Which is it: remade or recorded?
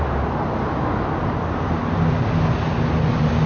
recorded